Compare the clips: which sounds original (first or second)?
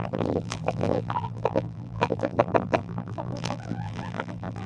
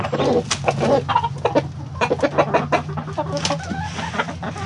second